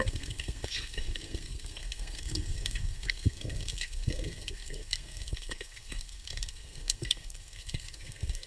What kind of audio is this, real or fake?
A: fake